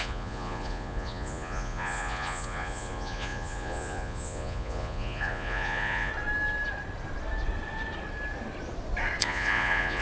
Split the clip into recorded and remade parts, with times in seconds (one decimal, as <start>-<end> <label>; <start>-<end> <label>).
0.0-6.1 remade; 6.1-9.2 recorded; 9.2-10.0 remade